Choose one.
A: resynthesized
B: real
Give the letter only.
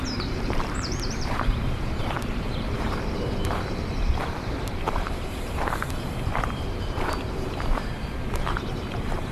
A